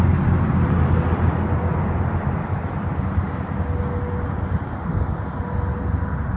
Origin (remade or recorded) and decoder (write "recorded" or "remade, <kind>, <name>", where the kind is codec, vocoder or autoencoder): recorded